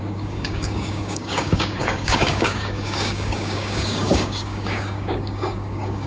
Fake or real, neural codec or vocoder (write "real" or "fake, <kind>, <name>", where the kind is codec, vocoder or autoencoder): fake, codec, DAC